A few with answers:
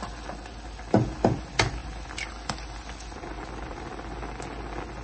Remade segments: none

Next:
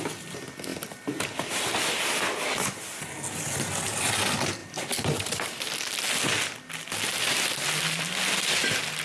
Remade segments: 4.6-5.7 (vocoder, BigVGAN v2)

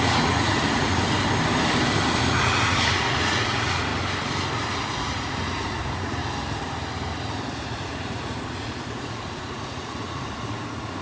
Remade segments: 0.0-1.0 (vocoder, Vocos); 2.3-3.9; 4.7-6.2; 7.5-11.0

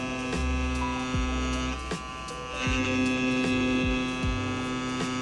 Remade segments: none

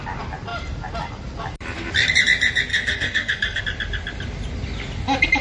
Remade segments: 2.7-3.6 (codec, SNAC)